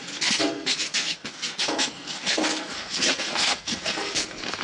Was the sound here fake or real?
fake